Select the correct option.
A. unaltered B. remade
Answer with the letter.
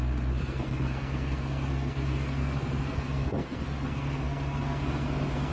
B